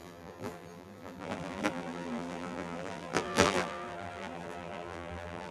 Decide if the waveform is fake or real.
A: fake